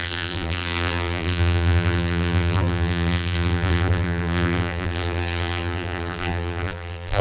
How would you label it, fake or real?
fake